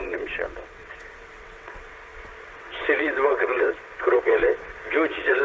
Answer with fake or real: fake